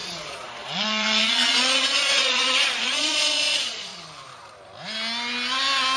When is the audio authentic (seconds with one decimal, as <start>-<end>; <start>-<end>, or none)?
3.9-6.0